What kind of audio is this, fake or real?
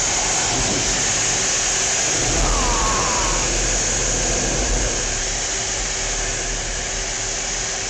real